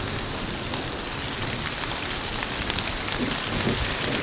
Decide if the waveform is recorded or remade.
recorded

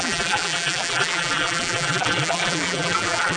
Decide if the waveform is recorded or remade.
remade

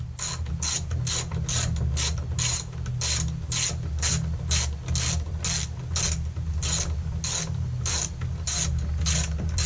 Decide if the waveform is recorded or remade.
recorded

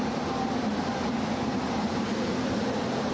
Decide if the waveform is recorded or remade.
remade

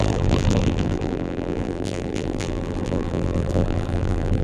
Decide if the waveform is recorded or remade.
remade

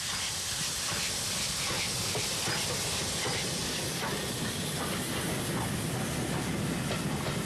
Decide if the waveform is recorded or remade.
recorded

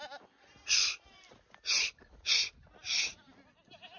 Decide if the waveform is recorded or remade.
recorded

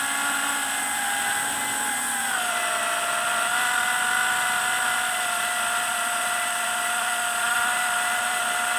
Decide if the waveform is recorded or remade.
remade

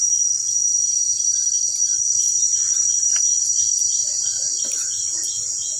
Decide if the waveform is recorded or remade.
recorded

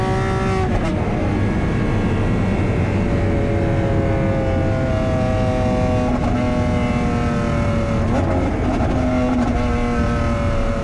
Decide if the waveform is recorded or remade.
recorded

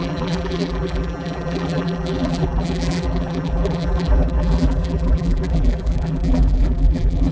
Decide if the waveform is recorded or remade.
remade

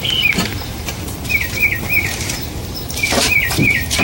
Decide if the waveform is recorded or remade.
remade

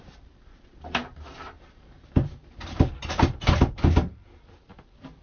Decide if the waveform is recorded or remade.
remade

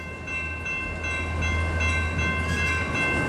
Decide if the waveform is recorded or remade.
recorded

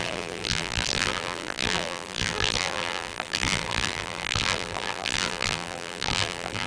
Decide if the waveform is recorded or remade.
remade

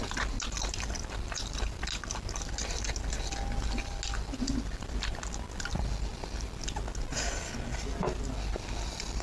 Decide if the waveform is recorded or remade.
recorded